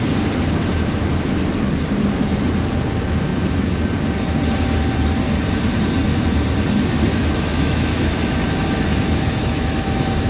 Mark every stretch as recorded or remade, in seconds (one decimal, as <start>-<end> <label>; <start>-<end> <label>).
0.0-7.1 recorded; 7.1-10.3 remade